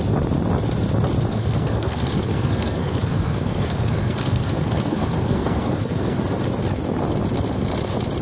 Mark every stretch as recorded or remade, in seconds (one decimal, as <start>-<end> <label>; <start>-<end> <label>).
0.0-1.3 recorded; 1.3-6.2 remade; 6.2-8.2 recorded